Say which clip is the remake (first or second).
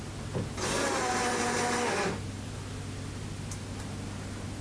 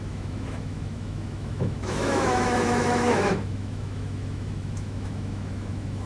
second